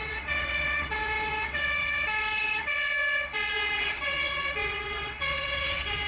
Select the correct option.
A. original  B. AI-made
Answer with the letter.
B